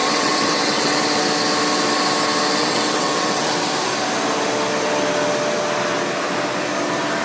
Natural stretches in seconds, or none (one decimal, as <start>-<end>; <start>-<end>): 1.0-2.6; 3.5-7.2